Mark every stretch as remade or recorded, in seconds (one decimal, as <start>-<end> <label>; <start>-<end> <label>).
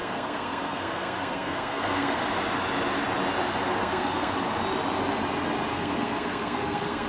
0.0-2.2 remade; 2.2-3.8 recorded; 3.8-4.3 remade; 4.3-5.7 recorded; 5.7-7.1 remade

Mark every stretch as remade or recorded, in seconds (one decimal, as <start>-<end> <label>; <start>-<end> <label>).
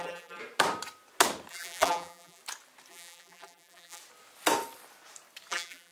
0.0-0.4 remade; 0.4-1.5 recorded; 1.5-2.4 remade; 2.4-2.9 recorded; 2.9-4.0 remade; 4.0-5.5 recorded; 5.5-5.9 remade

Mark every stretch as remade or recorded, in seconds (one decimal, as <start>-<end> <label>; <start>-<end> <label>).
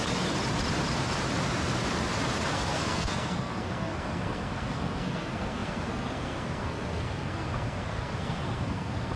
0.0-2.5 recorded; 2.5-9.2 remade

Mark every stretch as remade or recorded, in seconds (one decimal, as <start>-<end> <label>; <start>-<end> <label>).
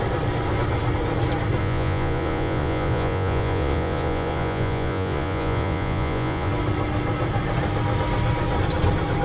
0.0-1.6 recorded; 1.6-6.5 remade; 6.5-9.2 recorded